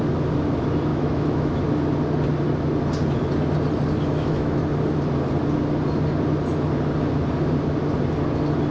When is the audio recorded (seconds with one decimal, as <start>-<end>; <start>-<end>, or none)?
0.0-0.9; 1.6-4.1; 4.6-8.7